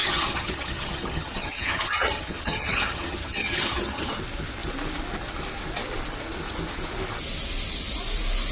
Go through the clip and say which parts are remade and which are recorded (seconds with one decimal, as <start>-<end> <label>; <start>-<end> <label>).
0.0-4.1 remade; 4.1-8.5 recorded